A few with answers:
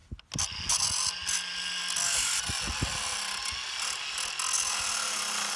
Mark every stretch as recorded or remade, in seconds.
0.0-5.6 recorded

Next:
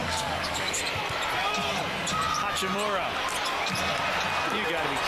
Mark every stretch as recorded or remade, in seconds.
0.0-0.8 remade; 0.8-5.1 recorded

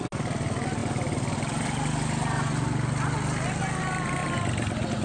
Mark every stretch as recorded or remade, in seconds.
0.0-5.0 recorded

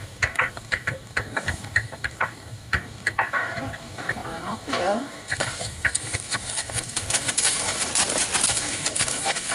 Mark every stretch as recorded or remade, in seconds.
0.0-7.9 remade; 7.9-8.5 recorded; 8.5-9.5 remade